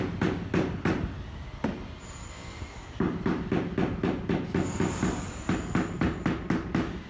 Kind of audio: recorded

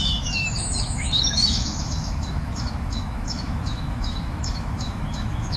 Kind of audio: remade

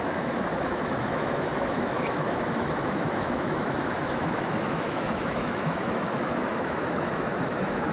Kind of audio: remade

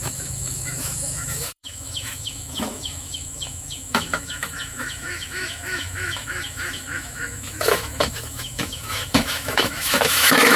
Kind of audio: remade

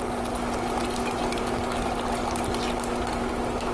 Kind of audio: recorded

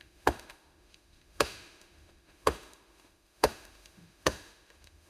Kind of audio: remade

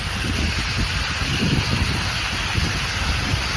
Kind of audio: recorded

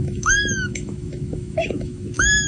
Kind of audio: remade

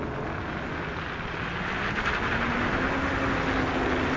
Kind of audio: recorded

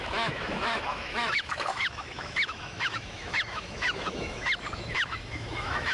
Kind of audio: remade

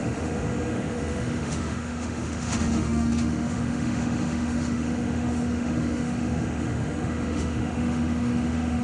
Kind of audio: remade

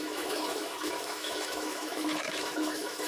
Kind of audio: remade